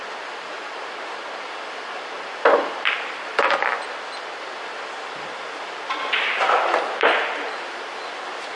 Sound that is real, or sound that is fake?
fake